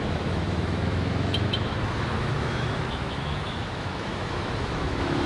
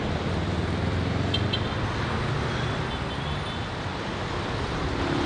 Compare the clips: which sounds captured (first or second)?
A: second